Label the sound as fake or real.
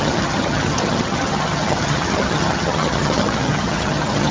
fake